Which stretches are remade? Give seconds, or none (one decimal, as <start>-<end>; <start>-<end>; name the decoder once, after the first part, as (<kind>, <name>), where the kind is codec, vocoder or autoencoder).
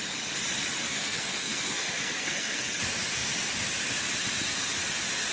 0.8-2.8 (codec, SNAC)